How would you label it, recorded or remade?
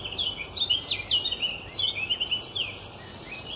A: recorded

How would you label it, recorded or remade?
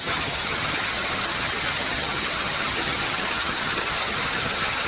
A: remade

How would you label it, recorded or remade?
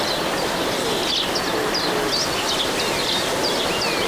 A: recorded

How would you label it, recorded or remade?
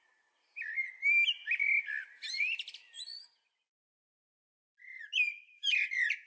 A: recorded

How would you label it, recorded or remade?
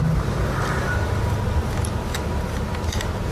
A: recorded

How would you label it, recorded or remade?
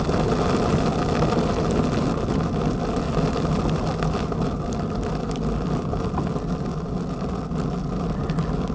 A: recorded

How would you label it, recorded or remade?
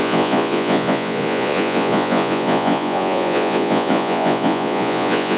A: remade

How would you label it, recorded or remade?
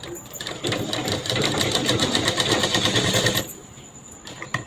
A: remade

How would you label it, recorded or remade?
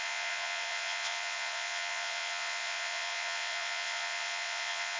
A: remade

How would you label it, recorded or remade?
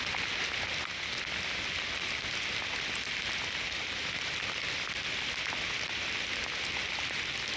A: recorded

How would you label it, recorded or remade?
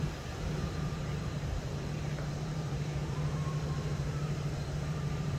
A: remade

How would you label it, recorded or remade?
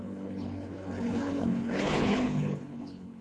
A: remade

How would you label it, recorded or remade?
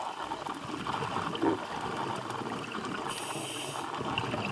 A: recorded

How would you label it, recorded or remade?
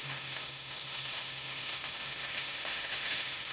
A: remade